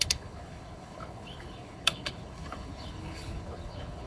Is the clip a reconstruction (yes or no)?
yes